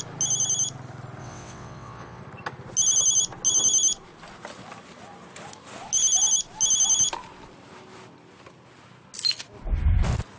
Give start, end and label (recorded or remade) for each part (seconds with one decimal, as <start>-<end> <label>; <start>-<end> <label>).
0.0-1.2 recorded; 1.2-2.2 remade; 2.2-10.4 recorded